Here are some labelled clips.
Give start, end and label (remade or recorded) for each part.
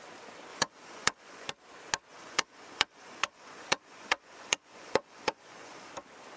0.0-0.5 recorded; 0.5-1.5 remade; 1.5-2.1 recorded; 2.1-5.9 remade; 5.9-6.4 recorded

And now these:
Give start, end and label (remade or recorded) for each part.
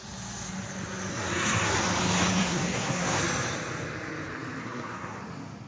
0.0-1.1 recorded; 1.1-1.8 remade; 1.8-2.4 recorded; 2.4-3.2 remade; 3.2-4.6 recorded; 4.6-5.2 remade; 5.2-5.7 recorded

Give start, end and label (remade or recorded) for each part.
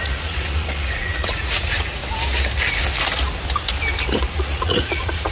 0.0-2.0 remade; 2.0-4.3 recorded; 4.3-5.3 remade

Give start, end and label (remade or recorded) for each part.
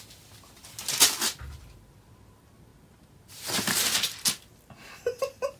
0.0-5.6 recorded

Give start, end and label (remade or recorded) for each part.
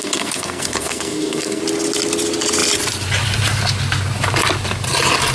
0.0-1.6 remade; 1.6-5.3 recorded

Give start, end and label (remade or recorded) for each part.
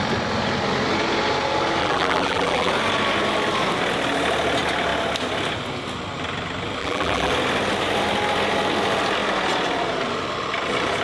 0.0-1.8 recorded; 1.8-2.7 remade; 2.7-6.8 recorded; 6.8-7.3 remade; 7.3-11.0 recorded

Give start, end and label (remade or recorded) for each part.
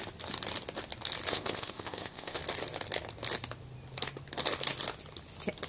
0.0-1.3 recorded; 1.3-2.4 remade; 2.4-5.7 recorded